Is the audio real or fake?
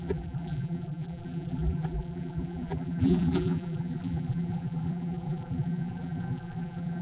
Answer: fake